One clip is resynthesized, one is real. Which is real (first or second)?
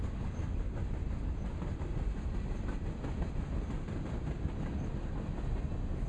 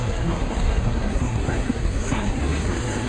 first